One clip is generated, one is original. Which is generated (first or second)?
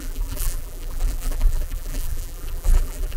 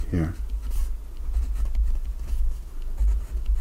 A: first